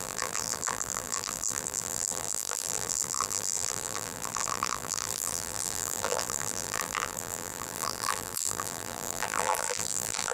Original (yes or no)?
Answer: no